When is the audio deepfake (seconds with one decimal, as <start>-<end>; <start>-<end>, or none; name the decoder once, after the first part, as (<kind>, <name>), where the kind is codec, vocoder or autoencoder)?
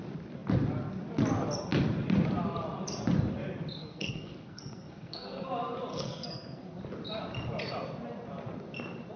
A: 3.8-5.5 (codec, SNAC); 5.9-6.6